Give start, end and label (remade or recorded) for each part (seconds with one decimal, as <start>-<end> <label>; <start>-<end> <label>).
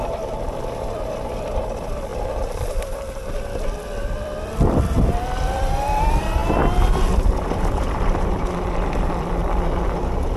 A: 0.0-2.1 remade; 2.1-4.0 recorded; 4.0-6.4 remade; 6.4-7.1 recorded; 7.1-9.4 remade; 9.4-10.4 recorded